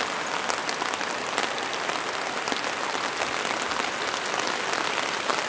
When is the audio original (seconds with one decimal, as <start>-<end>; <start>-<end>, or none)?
0.0-5.5